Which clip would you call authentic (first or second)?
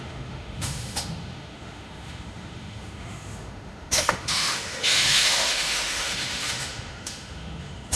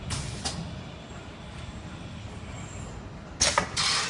second